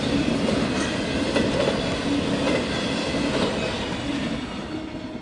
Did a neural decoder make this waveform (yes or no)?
no